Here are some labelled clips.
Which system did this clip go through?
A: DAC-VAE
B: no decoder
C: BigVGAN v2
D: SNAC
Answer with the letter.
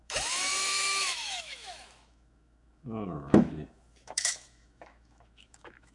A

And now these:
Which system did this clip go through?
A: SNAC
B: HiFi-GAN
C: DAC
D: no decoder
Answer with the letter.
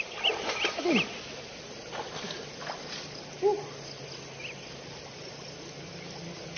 D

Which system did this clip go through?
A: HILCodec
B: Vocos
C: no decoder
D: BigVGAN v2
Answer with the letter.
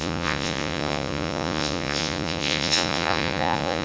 B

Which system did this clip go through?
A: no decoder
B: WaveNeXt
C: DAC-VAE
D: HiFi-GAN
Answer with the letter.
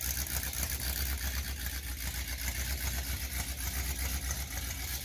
A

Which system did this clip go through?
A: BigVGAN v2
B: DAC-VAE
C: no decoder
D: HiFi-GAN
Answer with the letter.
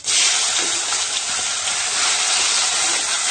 C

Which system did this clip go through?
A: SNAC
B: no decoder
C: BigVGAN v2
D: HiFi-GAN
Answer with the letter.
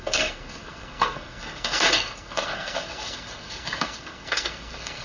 A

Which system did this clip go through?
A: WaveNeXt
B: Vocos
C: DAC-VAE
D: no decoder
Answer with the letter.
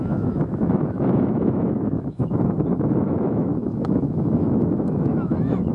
C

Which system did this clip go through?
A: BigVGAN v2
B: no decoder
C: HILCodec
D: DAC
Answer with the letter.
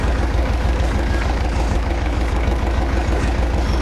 D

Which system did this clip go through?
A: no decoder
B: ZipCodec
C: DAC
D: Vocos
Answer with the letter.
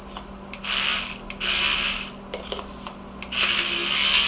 A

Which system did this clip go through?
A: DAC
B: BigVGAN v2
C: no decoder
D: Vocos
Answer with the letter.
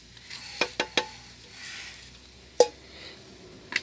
C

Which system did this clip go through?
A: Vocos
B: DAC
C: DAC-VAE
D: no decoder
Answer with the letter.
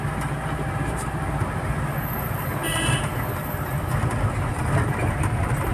D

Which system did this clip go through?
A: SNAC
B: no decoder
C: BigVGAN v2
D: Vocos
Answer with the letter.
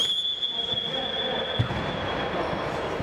C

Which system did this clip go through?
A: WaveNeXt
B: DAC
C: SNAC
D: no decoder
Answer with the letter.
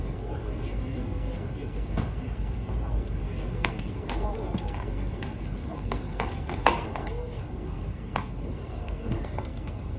C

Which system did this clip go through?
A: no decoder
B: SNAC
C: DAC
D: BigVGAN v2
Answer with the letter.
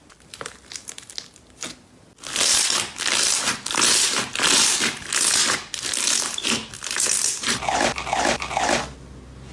A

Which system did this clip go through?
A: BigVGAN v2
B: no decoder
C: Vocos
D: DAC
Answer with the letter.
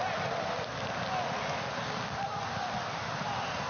B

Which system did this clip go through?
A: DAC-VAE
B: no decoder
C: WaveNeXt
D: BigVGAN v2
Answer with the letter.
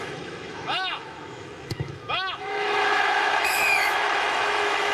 A